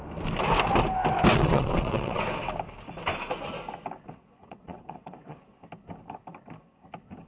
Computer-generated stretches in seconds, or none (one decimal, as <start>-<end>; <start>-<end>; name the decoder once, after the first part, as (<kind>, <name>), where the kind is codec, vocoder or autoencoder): 1.3-2.2 (vocoder, WaveNeXt); 4.4-5.4